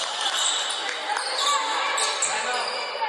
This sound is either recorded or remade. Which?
recorded